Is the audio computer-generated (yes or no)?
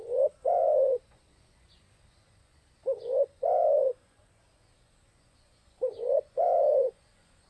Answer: yes